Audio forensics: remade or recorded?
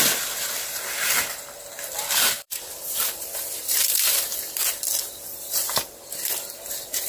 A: remade